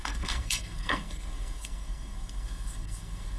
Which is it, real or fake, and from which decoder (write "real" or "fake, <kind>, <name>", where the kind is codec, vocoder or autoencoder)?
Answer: fake, codec, SNAC